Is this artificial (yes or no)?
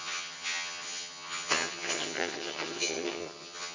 yes